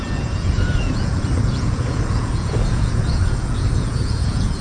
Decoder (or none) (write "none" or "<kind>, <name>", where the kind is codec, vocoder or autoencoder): vocoder, Vocos